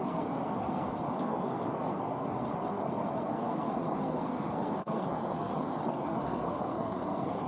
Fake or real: fake